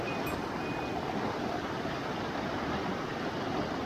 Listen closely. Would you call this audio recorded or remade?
recorded